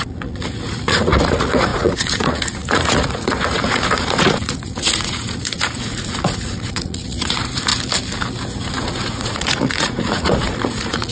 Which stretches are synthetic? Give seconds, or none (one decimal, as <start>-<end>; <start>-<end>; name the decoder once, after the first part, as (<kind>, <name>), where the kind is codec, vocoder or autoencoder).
0.0-7.7 (vocoder, Vocos); 8.6-11.1

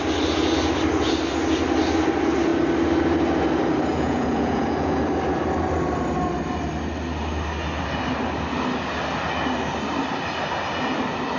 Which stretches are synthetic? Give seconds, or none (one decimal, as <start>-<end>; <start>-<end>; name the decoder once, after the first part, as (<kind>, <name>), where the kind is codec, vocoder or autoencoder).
3.9-5.0 (vocoder, Vocos)

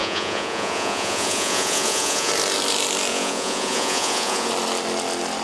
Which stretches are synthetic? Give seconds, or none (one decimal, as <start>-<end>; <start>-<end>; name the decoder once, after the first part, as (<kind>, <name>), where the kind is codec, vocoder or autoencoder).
0.0-2.3 (vocoder, Vocos); 3.1-4.5

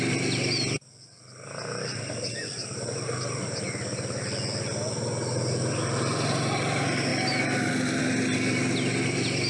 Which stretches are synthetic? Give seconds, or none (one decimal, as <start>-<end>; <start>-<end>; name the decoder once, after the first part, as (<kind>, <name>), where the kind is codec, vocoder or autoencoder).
none

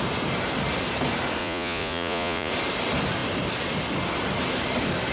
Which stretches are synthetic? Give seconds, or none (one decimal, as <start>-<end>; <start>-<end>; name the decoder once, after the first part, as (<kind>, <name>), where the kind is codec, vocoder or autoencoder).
1.4-2.5 (vocoder, Vocos)